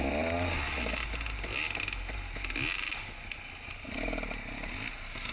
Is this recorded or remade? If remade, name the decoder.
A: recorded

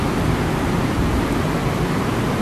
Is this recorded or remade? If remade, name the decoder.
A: recorded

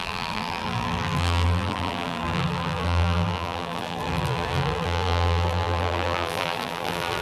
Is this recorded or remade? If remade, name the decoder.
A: remade, vocoder, BigVGAN v2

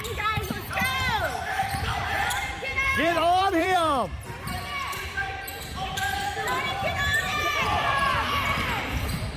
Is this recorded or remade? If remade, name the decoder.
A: remade, vocoder, BigVGAN v2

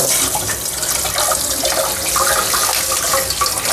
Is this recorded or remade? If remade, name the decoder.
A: recorded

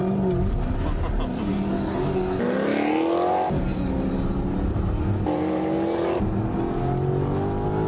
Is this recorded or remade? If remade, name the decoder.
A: recorded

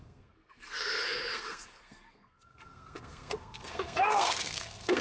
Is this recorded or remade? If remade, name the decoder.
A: remade, codec, SNAC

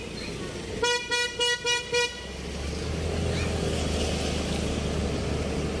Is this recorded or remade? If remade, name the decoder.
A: recorded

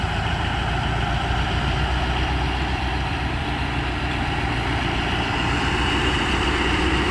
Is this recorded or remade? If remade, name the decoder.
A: remade, vocoder, BigVGAN v2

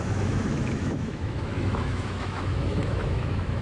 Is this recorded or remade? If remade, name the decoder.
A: remade, autoencoder, DAC-VAE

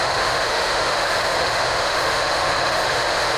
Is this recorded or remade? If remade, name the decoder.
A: remade, autoencoder, DAC-VAE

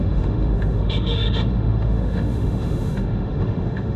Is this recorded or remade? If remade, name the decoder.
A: remade, autoencoder, DAC-VAE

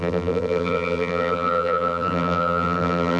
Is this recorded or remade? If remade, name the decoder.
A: remade, vocoder, BigVGAN v2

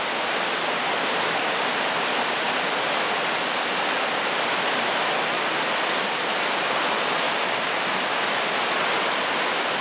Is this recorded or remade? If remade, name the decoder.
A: recorded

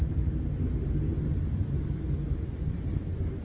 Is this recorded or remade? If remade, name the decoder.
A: recorded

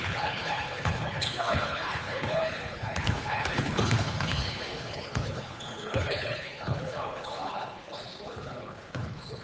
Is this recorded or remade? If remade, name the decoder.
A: remade, codec, HILCodec